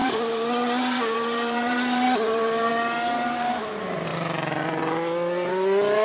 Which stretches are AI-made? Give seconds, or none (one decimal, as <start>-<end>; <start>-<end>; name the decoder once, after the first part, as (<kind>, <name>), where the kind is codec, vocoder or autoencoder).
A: 0.0-2.7 (vocoder, BigVGAN v2)